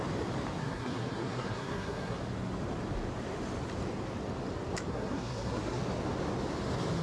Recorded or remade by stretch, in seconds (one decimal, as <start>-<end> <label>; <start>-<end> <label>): 0.0-0.6 recorded; 0.6-2.2 remade; 2.2-4.9 recorded; 4.9-5.8 remade; 5.8-7.0 recorded